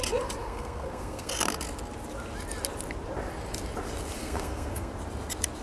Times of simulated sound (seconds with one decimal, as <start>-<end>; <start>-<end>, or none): 0.4-1.3; 4.2-4.9